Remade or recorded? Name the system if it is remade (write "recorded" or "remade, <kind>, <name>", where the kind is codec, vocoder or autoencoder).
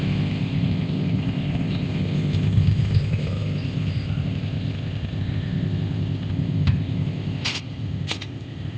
remade, codec, ZipCodec